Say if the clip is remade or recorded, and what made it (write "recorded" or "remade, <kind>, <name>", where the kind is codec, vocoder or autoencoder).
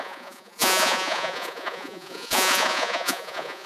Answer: remade, vocoder, Vocos